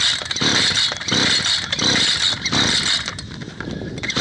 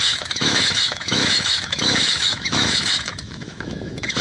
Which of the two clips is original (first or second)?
first